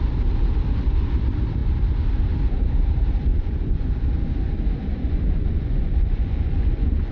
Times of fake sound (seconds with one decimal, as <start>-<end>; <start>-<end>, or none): 3.3-3.9; 4.9-7.1